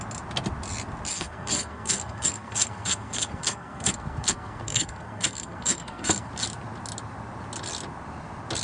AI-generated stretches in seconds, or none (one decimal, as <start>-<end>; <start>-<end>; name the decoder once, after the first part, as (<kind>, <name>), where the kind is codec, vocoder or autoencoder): 1.1-6.3 (codec, SNAC)